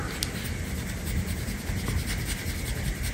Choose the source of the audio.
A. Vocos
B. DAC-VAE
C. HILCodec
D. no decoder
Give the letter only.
D